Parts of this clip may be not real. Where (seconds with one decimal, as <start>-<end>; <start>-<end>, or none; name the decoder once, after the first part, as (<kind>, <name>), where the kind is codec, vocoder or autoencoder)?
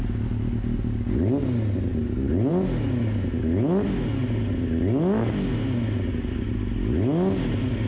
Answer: none